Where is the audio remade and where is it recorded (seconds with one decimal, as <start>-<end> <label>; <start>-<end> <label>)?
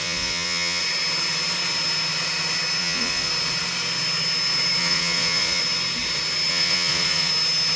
0.0-0.8 remade; 0.8-2.8 recorded; 2.8-3.3 remade; 3.3-4.8 recorded; 4.8-5.6 remade; 5.6-6.5 recorded; 6.5-7.3 remade; 7.3-7.8 recorded